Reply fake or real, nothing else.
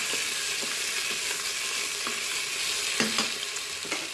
real